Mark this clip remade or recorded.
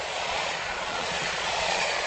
remade